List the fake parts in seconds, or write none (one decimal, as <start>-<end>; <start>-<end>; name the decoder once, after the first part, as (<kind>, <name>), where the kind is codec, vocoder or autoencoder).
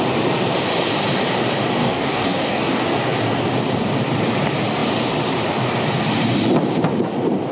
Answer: 1.8-2.8 (codec, DAC)